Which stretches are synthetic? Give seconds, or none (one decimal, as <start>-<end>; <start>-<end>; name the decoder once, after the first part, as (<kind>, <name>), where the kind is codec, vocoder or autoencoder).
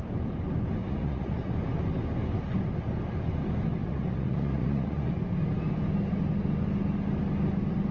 0.8-1.5 (vocoder, Vocos); 3.8-5.1